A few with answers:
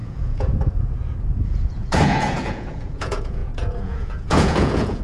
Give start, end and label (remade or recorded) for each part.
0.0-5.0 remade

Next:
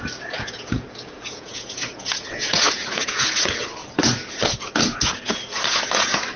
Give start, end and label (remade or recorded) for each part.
0.0-6.4 remade

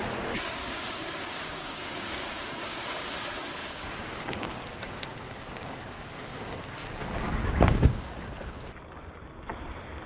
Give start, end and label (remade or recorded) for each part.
0.0-0.6 recorded; 0.6-3.1 remade; 3.1-3.6 recorded; 3.6-6.6 remade; 6.6-7.4 recorded; 7.4-8.1 remade; 8.1-10.1 recorded

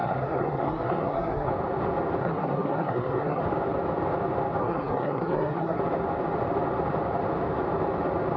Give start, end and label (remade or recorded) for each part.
0.0-1.5 remade; 1.5-2.2 recorded; 2.2-3.4 remade; 3.4-4.6 recorded; 4.6-5.8 remade; 5.8-8.4 recorded

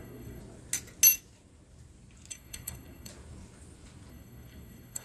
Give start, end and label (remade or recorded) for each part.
0.0-0.4 remade; 0.4-2.3 recorded; 2.3-3.1 remade; 3.1-4.1 recorded; 4.1-5.0 remade

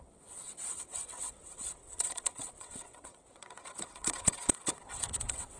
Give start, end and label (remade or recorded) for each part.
0.0-5.6 remade

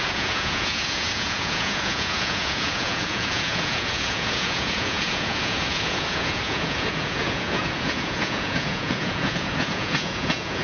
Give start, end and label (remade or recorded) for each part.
0.0-10.6 remade

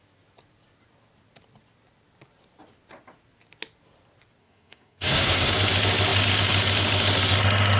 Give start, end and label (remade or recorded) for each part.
0.0-4.4 recorded; 4.4-5.5 remade; 5.5-7.8 recorded